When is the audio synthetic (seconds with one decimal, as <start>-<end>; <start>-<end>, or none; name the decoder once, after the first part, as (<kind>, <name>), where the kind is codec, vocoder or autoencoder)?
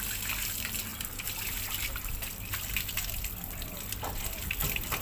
0.0-5.0 (vocoder, BigVGAN v2)